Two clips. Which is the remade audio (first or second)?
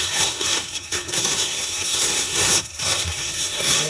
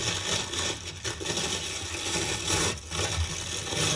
first